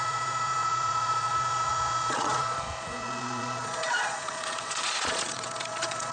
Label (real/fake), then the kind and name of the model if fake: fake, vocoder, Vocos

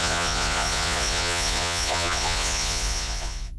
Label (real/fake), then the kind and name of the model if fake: fake, vocoder, Vocos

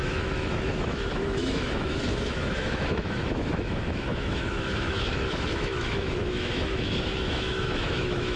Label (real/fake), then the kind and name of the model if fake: fake, autoencoder, DAC-VAE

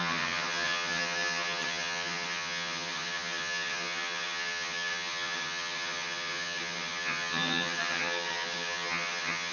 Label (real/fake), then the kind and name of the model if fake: fake, vocoder, HiFi-GAN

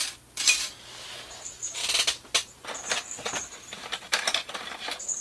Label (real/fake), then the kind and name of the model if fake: real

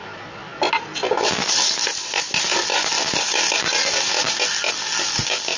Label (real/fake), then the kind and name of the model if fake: real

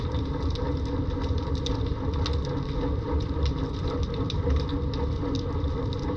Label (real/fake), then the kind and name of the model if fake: real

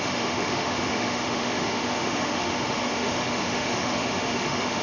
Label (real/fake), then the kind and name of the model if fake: fake, autoencoder, DAC-VAE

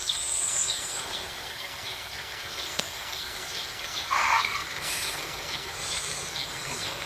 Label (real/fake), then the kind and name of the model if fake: fake, codec, SNAC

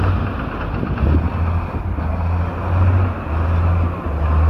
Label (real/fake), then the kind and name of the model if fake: real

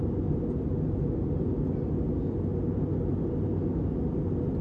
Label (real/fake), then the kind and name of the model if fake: real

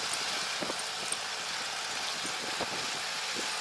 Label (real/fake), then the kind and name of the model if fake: real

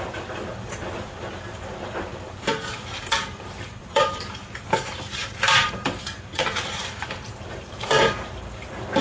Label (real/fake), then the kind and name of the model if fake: fake, vocoder, BigVGAN v2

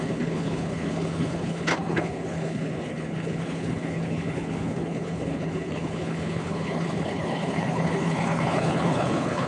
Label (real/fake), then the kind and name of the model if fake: fake, codec, HILCodec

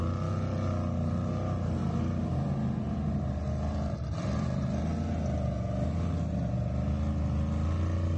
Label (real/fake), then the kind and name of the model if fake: real